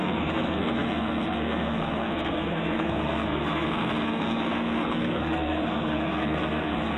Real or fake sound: fake